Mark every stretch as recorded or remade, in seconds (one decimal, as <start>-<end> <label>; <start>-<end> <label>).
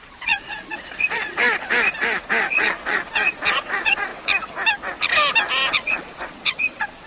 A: 0.0-1.4 remade; 1.4-2.5 recorded; 2.5-4.1 remade; 4.1-5.7 recorded; 5.7-7.1 remade